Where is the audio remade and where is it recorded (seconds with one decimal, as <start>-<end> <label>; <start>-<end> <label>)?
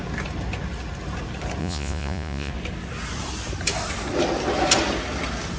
0.0-1.6 recorded; 1.6-2.5 remade; 2.5-5.6 recorded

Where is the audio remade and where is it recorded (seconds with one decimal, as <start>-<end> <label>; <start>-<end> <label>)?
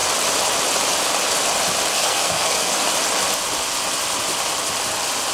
0.0-1.9 recorded; 1.9-2.8 remade; 2.8-5.3 recorded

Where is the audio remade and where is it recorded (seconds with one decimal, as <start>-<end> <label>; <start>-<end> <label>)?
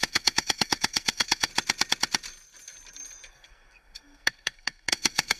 0.0-1.5 remade; 1.5-3.3 recorded; 3.3-5.4 remade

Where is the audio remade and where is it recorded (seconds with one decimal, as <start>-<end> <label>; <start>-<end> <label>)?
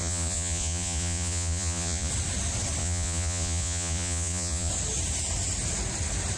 0.0-2.1 remade; 2.1-2.8 recorded; 2.8-4.7 remade; 4.7-6.4 recorded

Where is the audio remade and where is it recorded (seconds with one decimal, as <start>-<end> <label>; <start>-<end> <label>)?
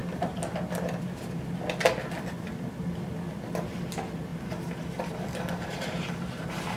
0.0-4.3 recorded; 4.3-6.8 remade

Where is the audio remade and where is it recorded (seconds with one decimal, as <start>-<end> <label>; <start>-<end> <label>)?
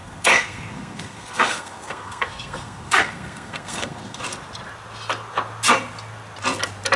0.0-4.2 remade; 4.2-7.0 recorded